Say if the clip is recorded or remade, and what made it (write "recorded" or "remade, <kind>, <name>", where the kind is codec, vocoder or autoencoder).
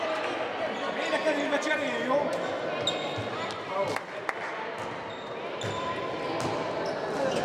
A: recorded